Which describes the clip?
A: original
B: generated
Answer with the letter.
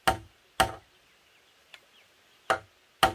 A